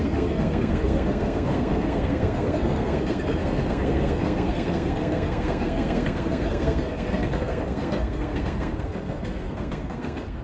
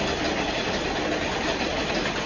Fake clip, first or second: first